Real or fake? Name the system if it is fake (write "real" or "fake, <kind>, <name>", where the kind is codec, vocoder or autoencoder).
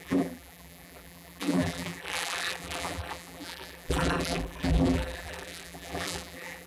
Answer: fake, vocoder, BigVGAN v2